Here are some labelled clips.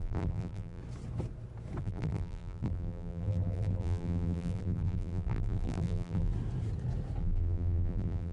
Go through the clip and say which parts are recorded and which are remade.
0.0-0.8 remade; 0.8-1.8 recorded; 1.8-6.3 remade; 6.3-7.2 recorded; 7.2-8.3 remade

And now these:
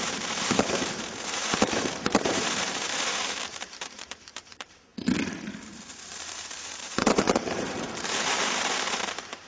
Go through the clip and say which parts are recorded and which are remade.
0.0-4.9 remade; 4.9-5.5 recorded; 5.5-9.5 remade

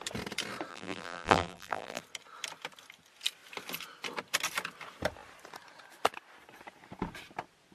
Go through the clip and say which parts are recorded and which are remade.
0.0-0.7 recorded; 0.7-2.0 remade; 2.0-7.7 recorded